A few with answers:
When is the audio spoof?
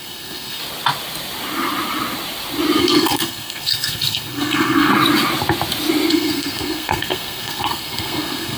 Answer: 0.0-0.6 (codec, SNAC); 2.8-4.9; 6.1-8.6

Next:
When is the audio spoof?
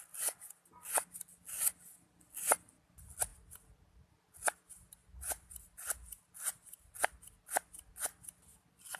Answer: none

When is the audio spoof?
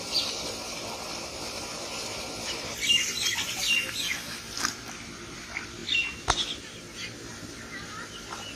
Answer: none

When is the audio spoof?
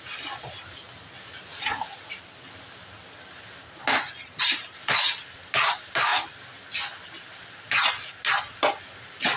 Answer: 1.5-2.1 (vocoder, Vocos)